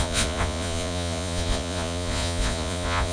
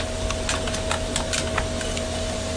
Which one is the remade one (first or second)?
first